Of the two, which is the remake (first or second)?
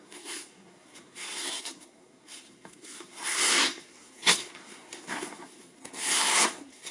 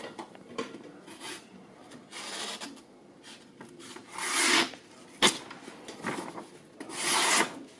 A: first